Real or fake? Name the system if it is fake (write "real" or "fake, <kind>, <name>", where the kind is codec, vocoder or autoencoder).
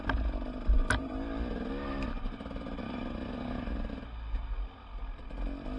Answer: real